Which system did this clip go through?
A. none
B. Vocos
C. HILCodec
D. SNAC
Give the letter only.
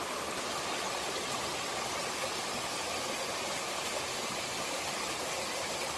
A